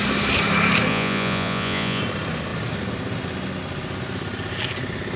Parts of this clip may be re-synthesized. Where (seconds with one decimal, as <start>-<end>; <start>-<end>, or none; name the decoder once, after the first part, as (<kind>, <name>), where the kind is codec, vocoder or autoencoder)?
0.9-2.0 (vocoder, Vocos)